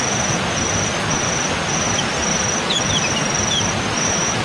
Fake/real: real